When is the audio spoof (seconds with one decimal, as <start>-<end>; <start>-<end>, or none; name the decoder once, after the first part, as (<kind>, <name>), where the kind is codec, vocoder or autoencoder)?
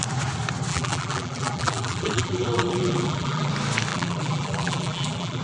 0.7-3.5 (vocoder, BigVGAN v2); 3.9-5.4